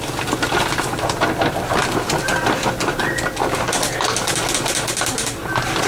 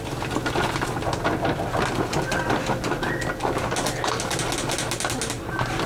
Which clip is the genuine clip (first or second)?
second